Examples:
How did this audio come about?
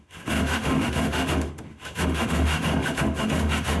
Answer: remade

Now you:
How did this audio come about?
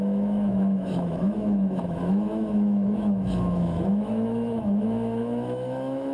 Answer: remade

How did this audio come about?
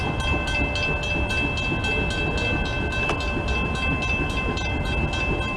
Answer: recorded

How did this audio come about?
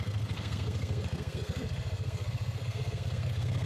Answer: remade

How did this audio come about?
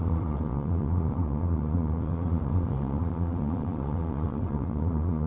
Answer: remade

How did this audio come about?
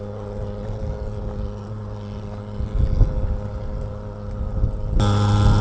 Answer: recorded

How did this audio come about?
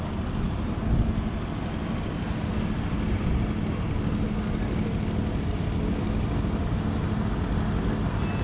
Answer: recorded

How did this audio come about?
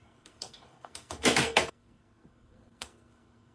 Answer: remade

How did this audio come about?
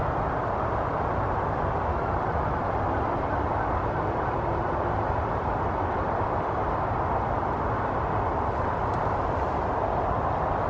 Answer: recorded